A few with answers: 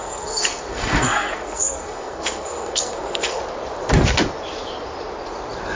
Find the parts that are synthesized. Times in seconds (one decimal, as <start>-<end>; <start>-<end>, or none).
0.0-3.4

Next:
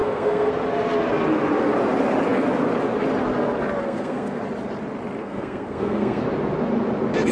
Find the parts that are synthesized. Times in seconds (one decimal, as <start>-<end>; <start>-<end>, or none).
0.0-0.5; 3.8-4.4; 5.2-6.2

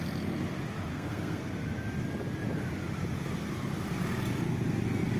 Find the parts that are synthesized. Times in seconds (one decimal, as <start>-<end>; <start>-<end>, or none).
0.9-1.5

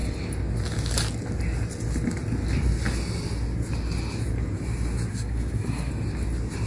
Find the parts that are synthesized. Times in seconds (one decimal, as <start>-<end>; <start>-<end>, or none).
5.1-5.9

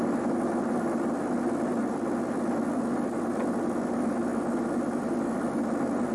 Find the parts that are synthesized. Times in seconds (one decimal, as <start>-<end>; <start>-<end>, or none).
none